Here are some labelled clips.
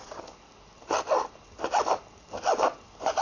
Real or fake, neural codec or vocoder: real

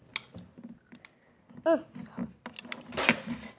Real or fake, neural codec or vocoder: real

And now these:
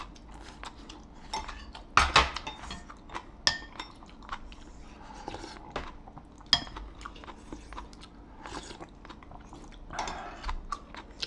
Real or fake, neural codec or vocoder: real